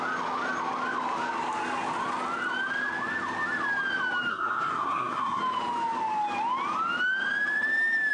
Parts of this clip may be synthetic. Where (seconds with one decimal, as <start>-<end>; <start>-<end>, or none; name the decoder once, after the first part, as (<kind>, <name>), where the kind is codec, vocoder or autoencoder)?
4.3-5.4 (codec, SNAC)